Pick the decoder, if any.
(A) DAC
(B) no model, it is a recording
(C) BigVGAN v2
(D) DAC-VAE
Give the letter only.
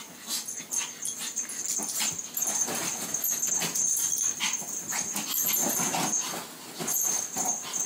B